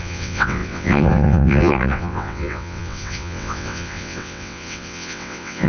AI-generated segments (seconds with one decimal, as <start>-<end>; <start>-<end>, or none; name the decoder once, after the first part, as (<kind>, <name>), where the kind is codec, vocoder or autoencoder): 0.0-5.7 (vocoder, WaveNeXt)